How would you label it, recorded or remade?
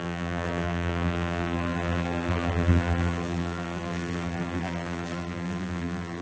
remade